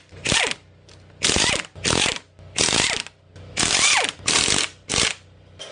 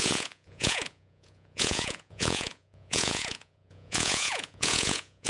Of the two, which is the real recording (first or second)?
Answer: first